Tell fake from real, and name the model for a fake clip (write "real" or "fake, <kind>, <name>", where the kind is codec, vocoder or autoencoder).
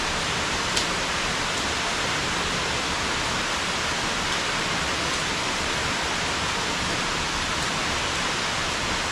real